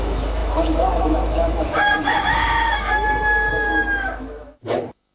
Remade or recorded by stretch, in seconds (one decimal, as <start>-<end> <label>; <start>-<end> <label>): 0.0-5.1 remade